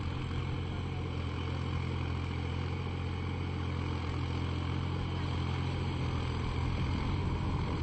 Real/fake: real